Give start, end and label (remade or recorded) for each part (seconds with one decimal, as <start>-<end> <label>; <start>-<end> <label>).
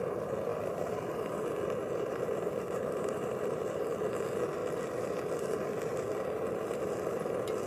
0.0-0.5 recorded; 0.5-4.1 remade; 4.1-7.7 recorded